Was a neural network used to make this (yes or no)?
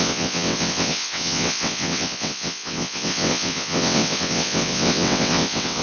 yes